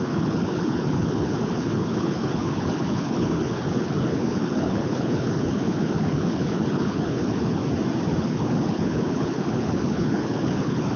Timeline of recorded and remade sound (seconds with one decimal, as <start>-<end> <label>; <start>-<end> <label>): 0.0-7.6 remade; 7.6-8.2 recorded; 8.2-11.0 remade